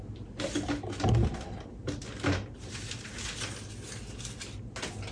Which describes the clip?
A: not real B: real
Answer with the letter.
B